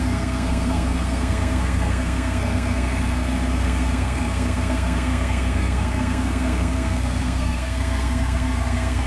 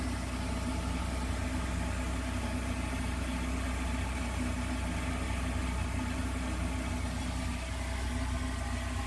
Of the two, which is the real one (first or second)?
second